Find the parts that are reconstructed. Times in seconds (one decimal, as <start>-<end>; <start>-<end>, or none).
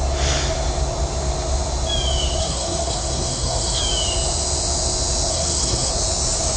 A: 2.4-3.8; 5.3-5.9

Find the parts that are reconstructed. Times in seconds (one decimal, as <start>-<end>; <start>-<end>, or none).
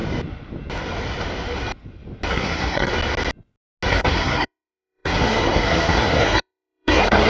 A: 2.3-2.9; 3.9-7.3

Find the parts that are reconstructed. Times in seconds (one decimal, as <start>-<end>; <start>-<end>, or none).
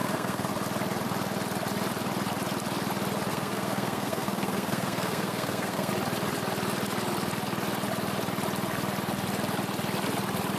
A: 0.0-0.5; 3.3-5.9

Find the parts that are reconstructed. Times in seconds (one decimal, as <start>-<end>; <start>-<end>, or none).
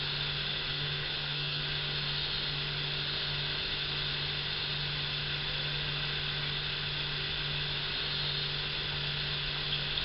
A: 0.7-1.6